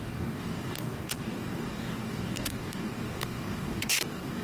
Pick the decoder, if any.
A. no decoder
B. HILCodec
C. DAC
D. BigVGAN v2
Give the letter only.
C